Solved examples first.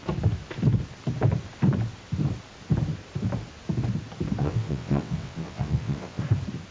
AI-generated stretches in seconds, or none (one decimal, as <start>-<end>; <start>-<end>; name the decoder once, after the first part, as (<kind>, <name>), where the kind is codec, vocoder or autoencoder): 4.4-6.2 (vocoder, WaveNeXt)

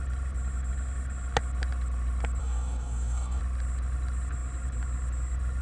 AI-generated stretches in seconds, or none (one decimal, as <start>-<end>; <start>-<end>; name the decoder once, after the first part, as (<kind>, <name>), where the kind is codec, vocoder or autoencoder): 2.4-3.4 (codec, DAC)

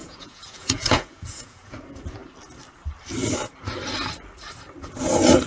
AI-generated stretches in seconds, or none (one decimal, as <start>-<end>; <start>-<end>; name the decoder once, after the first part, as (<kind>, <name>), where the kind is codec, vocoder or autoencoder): 0.0-1.7 (vocoder, Vocos)

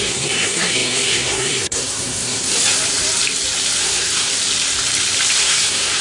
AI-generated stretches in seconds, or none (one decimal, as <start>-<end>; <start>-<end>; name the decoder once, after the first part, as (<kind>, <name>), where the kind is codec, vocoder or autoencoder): 0.0-2.5 (codec, SNAC); 3.8-4.3; 5.4-6.0